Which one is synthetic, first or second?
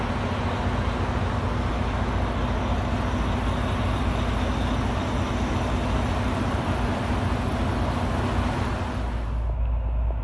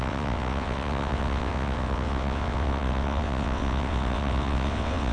second